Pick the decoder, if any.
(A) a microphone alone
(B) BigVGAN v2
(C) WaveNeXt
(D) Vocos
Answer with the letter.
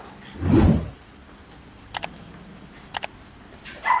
A